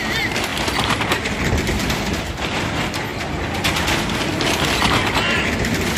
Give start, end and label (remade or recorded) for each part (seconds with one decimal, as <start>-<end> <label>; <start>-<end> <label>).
0.0-6.0 recorded